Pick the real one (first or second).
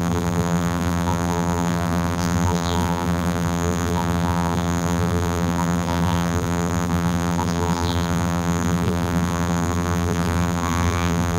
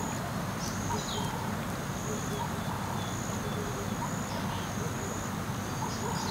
second